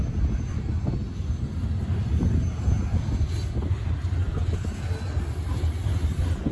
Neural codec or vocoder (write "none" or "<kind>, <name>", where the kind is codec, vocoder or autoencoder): none